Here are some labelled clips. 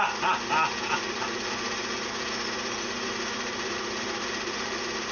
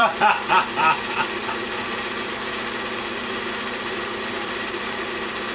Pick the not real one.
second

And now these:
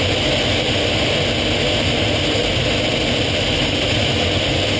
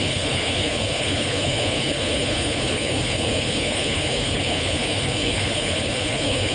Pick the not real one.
second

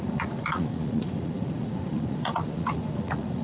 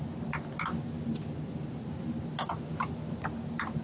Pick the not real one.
first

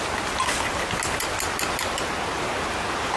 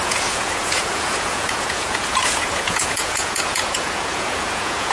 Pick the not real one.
second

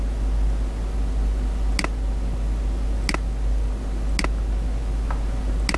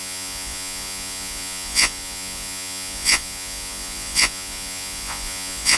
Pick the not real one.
second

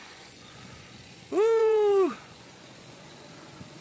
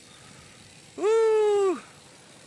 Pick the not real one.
first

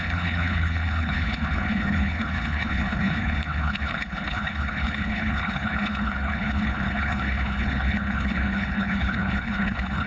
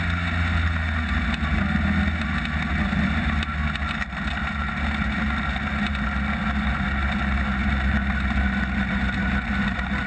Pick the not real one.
first